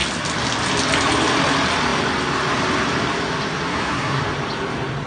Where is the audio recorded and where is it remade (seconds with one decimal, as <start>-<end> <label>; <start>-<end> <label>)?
0.0-3.7 recorded; 3.7-4.2 remade; 4.2-5.1 recorded